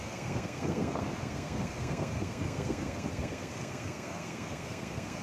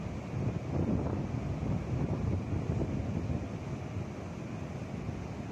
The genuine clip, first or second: second